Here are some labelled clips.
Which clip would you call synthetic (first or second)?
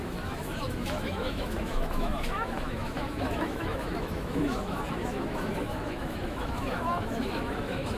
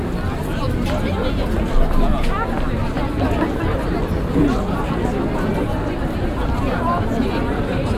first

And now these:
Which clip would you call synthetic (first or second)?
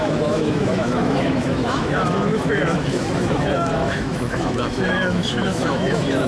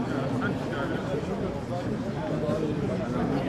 first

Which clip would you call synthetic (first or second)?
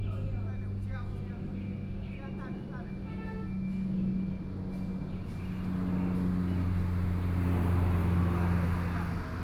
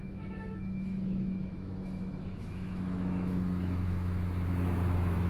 second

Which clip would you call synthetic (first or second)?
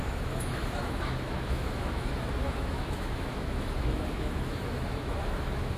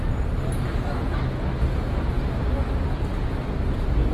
first